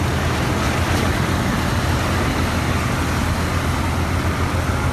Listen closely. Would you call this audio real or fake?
real